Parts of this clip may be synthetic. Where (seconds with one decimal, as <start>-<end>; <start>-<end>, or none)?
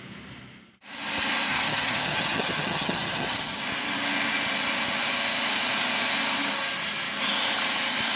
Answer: 1.5-3.6